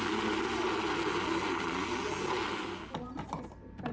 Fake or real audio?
real